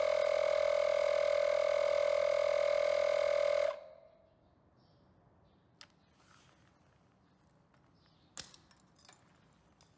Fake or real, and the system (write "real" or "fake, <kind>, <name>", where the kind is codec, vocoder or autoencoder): real